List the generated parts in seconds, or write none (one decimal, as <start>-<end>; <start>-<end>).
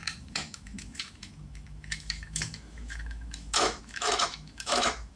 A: 0.0-5.2